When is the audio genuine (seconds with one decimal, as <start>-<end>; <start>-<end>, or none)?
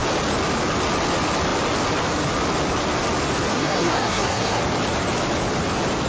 0.0-3.5; 4.6-6.1